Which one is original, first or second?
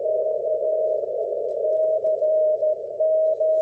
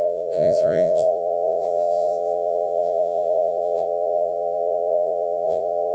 first